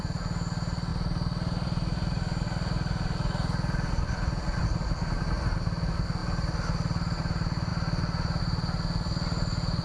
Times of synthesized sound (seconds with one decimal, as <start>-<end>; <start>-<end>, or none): none